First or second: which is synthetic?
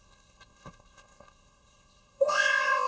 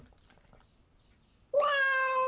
first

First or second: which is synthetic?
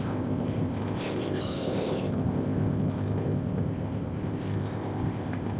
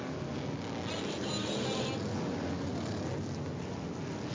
first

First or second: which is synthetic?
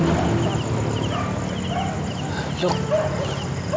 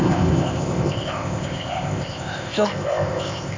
second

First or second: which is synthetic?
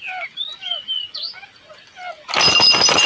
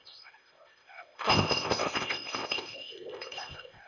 second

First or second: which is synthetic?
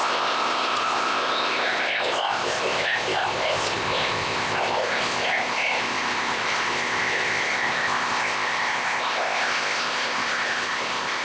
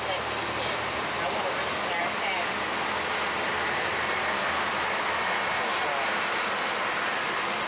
first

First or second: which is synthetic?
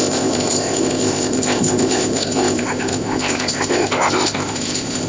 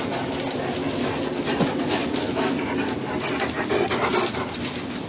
first